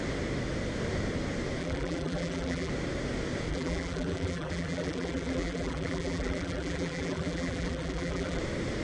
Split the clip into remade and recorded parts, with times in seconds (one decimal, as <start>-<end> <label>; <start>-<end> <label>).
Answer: 0.0-1.6 recorded; 1.6-2.7 remade; 2.7-3.5 recorded; 3.5-8.4 remade; 8.4-8.8 recorded